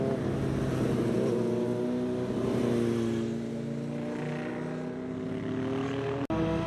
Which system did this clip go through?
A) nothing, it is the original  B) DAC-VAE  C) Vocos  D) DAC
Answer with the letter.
A